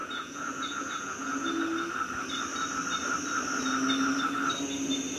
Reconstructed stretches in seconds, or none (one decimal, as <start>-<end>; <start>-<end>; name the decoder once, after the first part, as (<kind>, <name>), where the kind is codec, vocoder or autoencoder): 0.0-1.6 (vocoder, Vocos)